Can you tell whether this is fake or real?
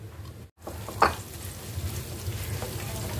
real